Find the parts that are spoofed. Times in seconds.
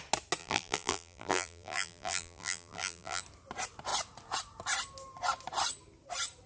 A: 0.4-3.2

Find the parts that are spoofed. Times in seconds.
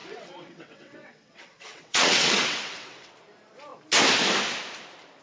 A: 0.0-3.1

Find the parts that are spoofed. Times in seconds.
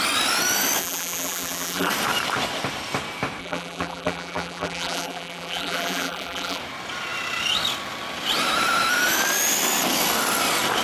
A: 0.8-1.9; 3.4-6.6